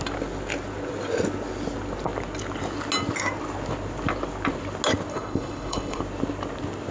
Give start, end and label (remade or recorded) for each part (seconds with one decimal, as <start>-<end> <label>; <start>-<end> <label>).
0.0-5.1 recorded; 5.1-6.0 remade; 6.0-6.9 recorded